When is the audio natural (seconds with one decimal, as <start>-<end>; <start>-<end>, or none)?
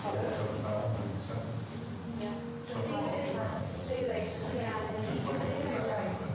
0.0-3.5; 5.8-6.3